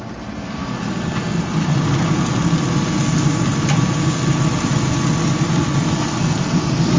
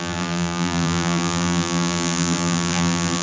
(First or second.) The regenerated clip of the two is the second